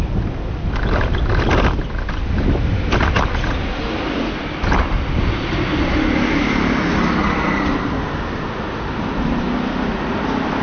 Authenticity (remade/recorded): recorded